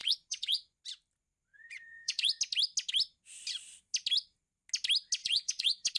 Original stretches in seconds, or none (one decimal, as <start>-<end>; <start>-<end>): 0.8-1.5; 2.4-5.2